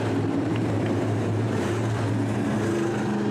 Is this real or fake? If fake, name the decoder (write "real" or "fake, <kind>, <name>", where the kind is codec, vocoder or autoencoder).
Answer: fake, vocoder, BigVGAN v2